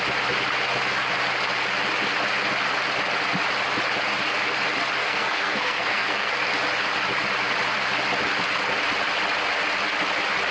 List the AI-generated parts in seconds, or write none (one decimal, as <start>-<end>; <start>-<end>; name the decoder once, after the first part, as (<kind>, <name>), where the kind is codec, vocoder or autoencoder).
5.0-6.3 (codec, SNAC)